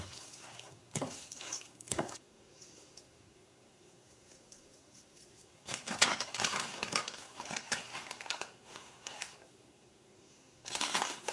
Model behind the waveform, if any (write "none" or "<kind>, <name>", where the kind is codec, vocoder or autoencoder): codec, SNAC